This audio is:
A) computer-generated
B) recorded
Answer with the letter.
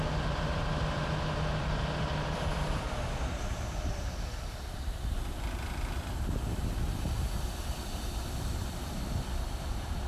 A